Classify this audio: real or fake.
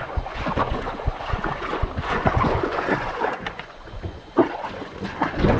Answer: fake